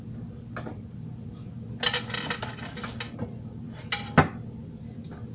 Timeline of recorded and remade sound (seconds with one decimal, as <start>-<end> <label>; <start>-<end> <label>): 0.0-5.3 recorded